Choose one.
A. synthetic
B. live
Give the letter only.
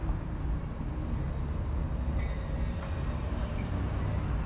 B